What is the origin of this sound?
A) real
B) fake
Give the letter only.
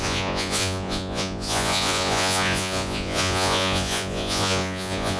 B